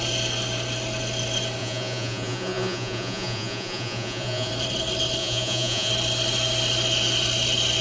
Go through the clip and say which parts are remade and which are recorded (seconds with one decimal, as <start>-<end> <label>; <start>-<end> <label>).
0.0-1.6 recorded; 1.6-4.5 remade; 4.5-5.2 recorded; 5.2-5.9 remade; 5.9-7.8 recorded